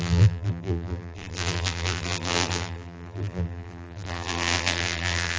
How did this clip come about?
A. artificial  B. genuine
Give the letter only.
A